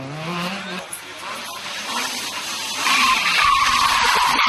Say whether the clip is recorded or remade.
recorded